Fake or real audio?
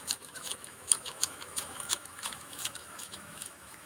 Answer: fake